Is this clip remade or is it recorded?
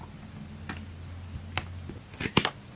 recorded